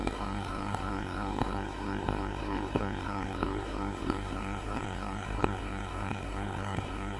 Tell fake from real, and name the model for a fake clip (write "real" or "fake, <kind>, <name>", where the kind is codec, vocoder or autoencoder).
fake, codec, SNAC